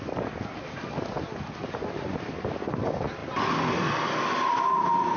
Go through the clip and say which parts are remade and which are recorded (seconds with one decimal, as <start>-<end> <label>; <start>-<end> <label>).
0.0-5.2 recorded